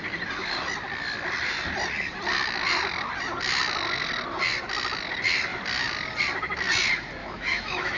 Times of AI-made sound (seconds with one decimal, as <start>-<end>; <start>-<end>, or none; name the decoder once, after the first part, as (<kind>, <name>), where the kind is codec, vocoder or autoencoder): 7.2-8.0 (autoencoder, DAC-VAE)